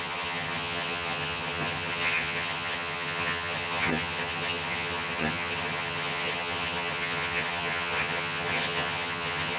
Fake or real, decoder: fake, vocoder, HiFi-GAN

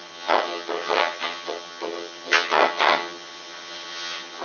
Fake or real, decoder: fake, vocoder, HiFi-GAN